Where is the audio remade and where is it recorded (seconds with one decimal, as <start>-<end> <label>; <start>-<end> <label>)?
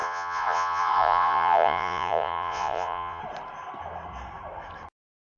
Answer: 0.0-3.2 remade; 3.2-5.4 recorded